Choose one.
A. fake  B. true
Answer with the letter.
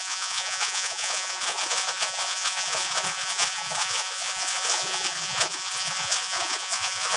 A